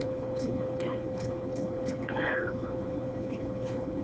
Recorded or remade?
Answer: remade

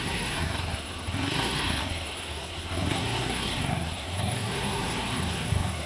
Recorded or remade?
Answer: remade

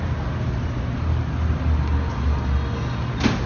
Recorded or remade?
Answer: recorded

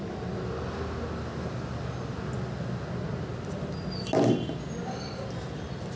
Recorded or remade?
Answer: recorded